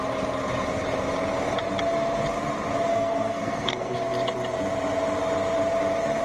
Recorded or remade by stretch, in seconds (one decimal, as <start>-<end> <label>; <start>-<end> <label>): 0.0-2.9 recorded; 2.9-4.0 remade; 4.0-6.2 recorded